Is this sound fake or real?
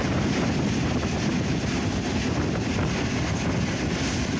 real